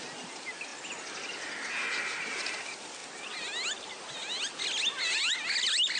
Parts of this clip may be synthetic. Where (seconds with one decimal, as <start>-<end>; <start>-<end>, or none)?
none